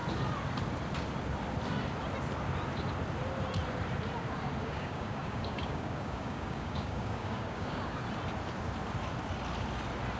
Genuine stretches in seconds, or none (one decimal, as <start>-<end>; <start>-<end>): 0.0-4.6; 8.0-10.2